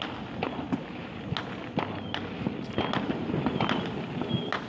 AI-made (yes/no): no